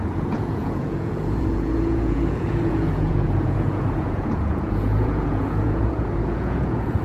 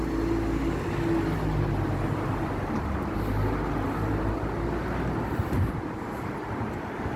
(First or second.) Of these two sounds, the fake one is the first